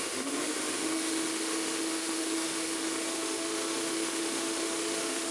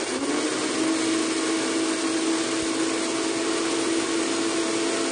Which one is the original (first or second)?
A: second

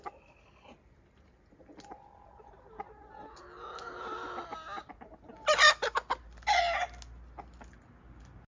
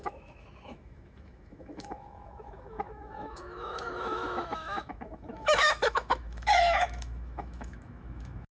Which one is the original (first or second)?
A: first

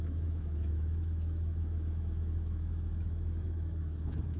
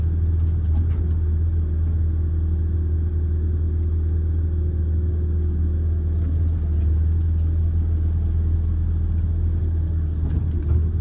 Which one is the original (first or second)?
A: second